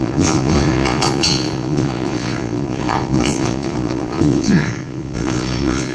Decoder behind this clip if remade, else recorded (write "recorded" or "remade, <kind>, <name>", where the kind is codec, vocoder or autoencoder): remade, vocoder, Vocos